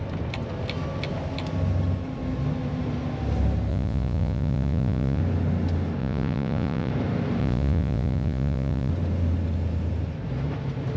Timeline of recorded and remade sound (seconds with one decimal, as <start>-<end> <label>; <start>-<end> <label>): 0.0-3.7 recorded; 3.7-5.2 remade; 5.2-6.0 recorded; 6.0-6.9 remade; 6.9-7.4 recorded; 7.4-8.9 remade; 8.9-11.0 recorded